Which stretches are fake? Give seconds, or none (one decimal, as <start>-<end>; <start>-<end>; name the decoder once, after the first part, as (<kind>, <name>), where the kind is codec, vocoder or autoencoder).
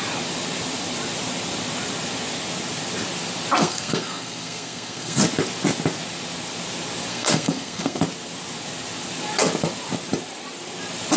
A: 3.6-5.2 (codec, SNAC); 7.1-8.0